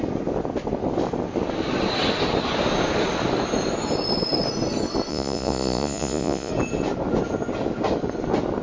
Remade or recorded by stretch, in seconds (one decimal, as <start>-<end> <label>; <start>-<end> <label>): 0.0-5.1 recorded; 5.1-6.5 remade; 6.5-8.6 recorded